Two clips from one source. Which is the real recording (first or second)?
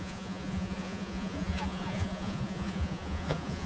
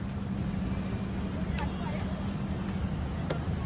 second